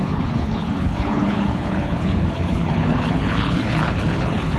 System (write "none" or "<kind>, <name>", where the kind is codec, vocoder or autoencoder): codec, HILCodec